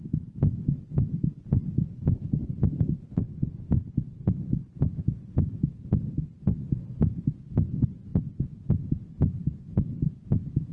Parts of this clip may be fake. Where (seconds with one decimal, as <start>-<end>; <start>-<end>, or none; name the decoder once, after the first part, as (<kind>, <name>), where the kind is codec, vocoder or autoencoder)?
4.9-5.8 (vocoder, BigVGAN v2)